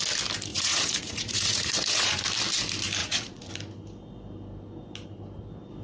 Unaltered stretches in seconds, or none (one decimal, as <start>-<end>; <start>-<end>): 0.0-0.5; 2.2-3.0; 3.5-5.8

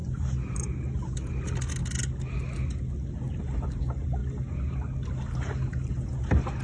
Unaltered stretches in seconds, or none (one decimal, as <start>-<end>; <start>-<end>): 0.0-6.6